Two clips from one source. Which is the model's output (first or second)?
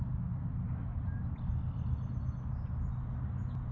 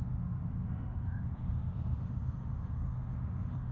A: second